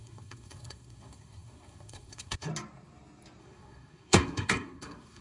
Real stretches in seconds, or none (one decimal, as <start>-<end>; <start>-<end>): 2.5-3.4